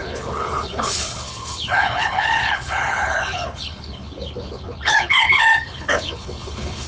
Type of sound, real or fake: fake